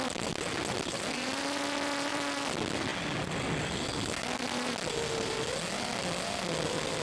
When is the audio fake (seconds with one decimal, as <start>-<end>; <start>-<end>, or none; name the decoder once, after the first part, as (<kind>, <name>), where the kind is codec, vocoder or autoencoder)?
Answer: none